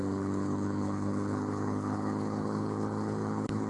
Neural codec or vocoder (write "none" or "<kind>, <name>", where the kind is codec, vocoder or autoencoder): codec, HILCodec